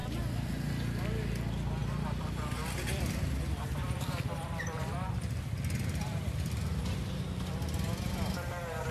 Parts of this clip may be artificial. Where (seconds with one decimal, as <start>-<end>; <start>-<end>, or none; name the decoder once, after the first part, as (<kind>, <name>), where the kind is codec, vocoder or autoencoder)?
0.0-0.5 (vocoder, BigVGAN v2); 1.8-6.6

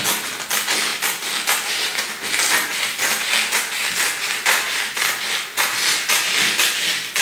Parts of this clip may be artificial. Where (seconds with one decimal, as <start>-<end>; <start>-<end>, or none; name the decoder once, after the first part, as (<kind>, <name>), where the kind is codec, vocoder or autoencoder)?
none

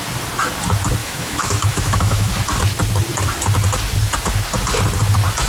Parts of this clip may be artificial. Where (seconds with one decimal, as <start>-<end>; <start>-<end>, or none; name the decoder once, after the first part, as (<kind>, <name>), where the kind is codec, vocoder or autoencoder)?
1.0-2.3 (autoencoder, DAC-VAE)

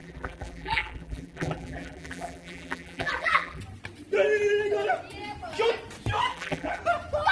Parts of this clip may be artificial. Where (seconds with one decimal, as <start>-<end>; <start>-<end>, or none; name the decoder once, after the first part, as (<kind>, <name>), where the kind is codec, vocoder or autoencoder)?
0.0-3.6 (vocoder, BigVGAN v2); 6.3-6.8

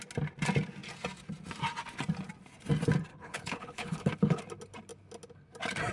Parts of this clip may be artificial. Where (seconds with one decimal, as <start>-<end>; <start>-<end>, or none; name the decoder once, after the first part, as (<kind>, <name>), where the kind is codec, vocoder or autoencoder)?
3.1-4.4 (codec, HILCodec)